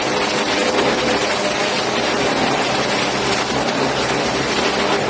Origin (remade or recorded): recorded